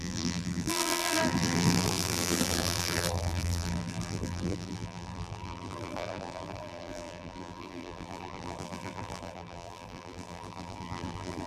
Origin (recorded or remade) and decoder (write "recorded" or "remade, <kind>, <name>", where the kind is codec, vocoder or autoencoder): remade, vocoder, BigVGAN v2